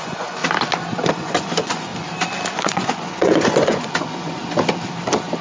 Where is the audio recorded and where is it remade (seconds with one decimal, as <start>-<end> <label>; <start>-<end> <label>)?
0.0-0.4 remade; 0.4-1.1 recorded; 1.1-1.9 remade; 1.9-2.5 recorded; 2.5-4.4 remade; 4.4-5.4 recorded